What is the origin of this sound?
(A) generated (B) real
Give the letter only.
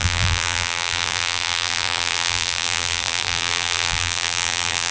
A